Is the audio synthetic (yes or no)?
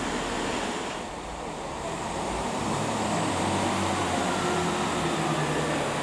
no